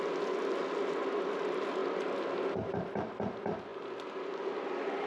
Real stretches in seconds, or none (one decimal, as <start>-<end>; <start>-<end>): 0.0-5.1